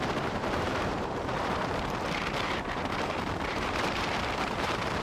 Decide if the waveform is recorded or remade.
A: remade